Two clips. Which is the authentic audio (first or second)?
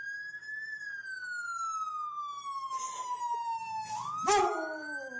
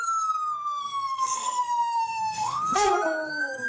first